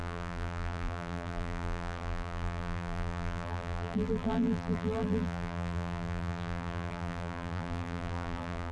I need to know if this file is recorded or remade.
remade